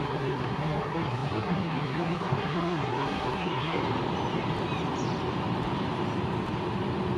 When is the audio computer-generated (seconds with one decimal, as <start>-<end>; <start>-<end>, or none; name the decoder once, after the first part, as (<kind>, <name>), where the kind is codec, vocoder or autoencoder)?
0.0-3.8 (codec, SNAC)